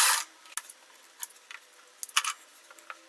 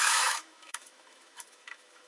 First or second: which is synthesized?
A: second